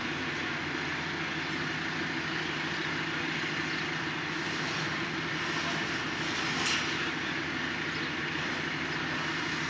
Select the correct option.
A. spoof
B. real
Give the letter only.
B